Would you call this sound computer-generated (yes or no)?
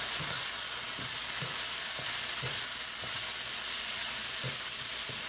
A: no